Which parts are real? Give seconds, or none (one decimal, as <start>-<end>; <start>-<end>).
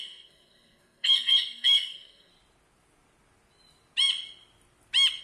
2.3-5.2